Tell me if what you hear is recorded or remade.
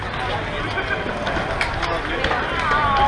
recorded